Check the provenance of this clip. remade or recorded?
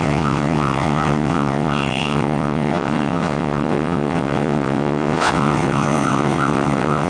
remade